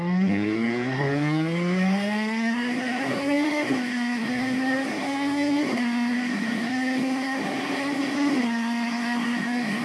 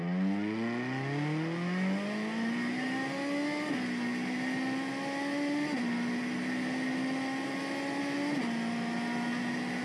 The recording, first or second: second